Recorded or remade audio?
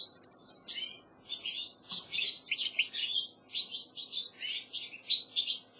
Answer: recorded